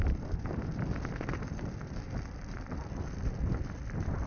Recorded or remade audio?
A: remade